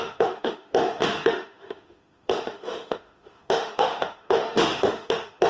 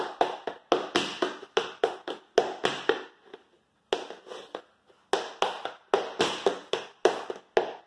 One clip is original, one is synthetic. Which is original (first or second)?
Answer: second